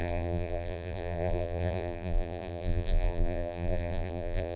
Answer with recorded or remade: remade